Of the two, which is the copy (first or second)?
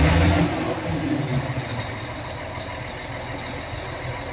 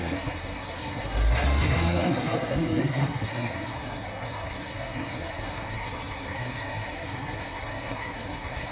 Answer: second